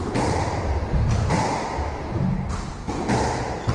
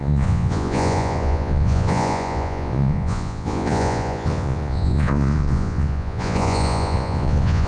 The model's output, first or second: second